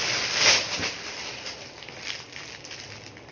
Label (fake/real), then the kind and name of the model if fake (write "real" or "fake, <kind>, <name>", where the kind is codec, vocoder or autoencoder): real